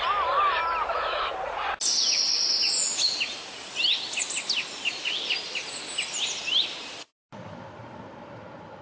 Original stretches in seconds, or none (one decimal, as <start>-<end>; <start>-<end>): 0.0-3.9; 6.2-8.8